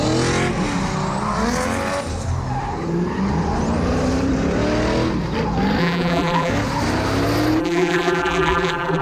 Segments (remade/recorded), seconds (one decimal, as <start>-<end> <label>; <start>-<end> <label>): 0.0-5.8 recorded; 5.8-6.5 remade; 6.5-7.6 recorded; 7.6-9.0 remade